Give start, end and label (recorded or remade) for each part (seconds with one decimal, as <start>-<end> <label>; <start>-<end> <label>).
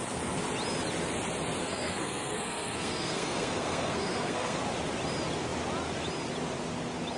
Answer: 0.0-1.6 recorded; 1.6-4.6 remade; 4.6-7.2 recorded